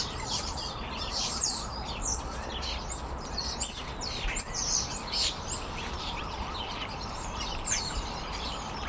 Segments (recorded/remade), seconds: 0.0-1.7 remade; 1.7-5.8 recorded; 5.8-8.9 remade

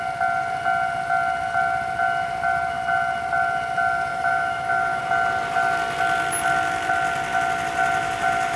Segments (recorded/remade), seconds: 0.0-4.1 recorded; 4.1-5.0 remade; 5.0-8.6 recorded

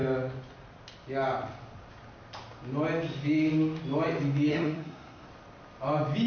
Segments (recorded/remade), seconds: 0.0-4.5 recorded; 4.5-5.3 remade; 5.3-6.3 recorded

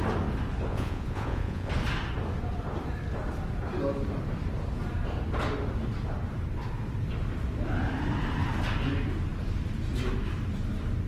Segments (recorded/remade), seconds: 0.0-0.7 recorded; 0.7-1.7 remade; 1.7-11.1 recorded

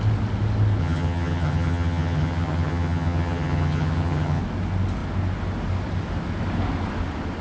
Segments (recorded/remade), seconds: 0.0-0.8 recorded; 0.8-4.4 remade; 4.4-7.4 recorded